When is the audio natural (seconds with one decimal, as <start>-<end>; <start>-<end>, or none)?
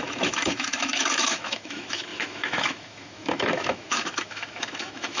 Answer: none